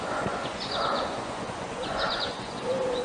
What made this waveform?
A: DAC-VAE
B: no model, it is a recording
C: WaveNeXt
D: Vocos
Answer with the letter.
D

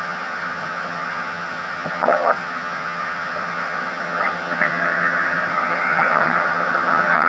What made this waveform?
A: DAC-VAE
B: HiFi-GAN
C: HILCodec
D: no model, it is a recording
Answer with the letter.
B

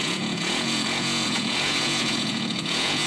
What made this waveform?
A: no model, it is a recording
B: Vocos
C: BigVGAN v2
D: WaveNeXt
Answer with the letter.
B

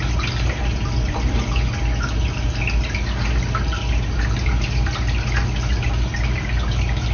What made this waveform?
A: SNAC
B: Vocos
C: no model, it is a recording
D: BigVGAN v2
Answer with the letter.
C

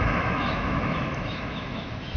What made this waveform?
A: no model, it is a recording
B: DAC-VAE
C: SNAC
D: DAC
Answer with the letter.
B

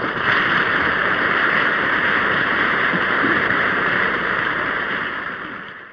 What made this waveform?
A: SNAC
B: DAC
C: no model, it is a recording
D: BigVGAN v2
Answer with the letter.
D